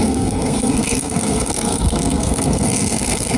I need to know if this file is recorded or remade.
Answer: remade